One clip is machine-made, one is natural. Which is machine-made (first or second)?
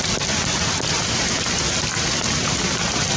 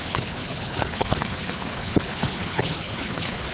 second